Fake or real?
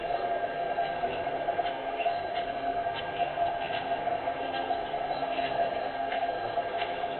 fake